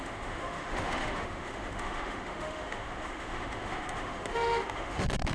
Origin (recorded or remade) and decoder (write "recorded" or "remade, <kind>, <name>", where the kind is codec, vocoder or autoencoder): remade, autoencoder, DAC-VAE